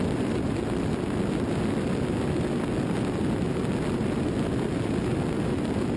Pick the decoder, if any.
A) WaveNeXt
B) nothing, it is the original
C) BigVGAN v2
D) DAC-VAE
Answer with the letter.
B